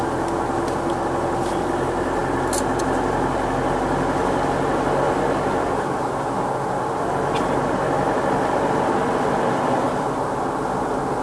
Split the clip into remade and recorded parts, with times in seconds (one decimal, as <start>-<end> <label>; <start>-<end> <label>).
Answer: 0.0-11.2 recorded